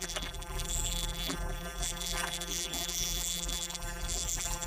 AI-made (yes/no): yes